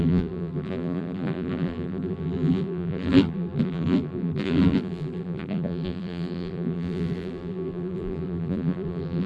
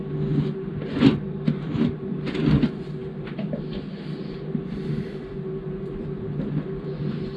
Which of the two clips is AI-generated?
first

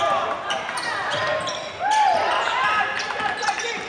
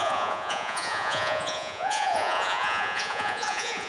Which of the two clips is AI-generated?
second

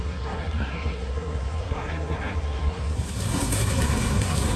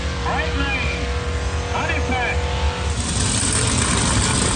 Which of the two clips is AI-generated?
first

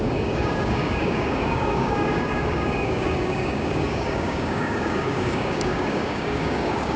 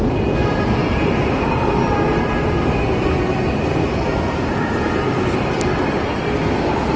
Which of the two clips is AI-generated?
first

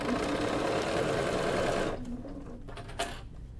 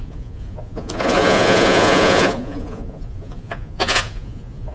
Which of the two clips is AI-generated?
second